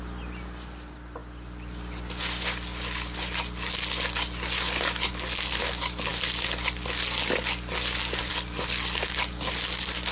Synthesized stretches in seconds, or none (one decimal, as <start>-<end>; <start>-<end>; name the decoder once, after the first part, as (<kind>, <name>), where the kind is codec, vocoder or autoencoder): none